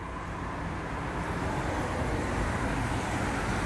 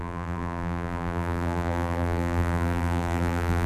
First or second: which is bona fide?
first